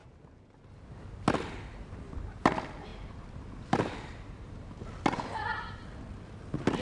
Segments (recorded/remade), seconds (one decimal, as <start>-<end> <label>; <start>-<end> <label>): 0.0-6.8 recorded